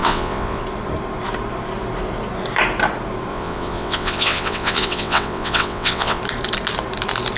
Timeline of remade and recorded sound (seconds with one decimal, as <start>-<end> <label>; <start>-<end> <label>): 0.0-0.6 remade; 0.6-3.3 recorded; 3.3-6.2 remade; 6.2-7.4 recorded